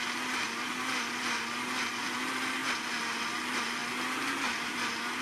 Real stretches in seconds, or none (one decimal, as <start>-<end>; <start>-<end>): 2.6-3.2; 3.8-4.3